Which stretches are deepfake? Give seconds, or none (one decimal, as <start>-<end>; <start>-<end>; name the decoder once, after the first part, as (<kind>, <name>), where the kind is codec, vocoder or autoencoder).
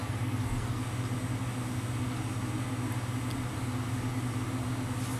0.0-0.8 (codec, SNAC)